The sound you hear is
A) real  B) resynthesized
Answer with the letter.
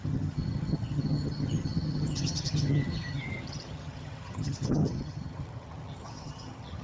B